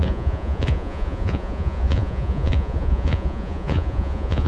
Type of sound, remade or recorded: remade